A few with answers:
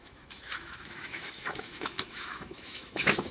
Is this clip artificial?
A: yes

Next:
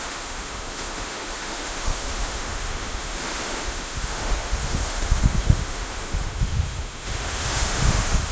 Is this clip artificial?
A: yes